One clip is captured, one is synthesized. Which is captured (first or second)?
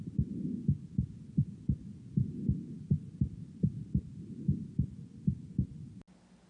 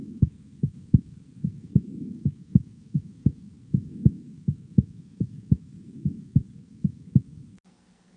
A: first